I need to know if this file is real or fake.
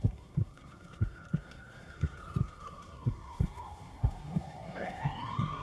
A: fake